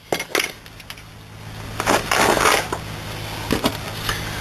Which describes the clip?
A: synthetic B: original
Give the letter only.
B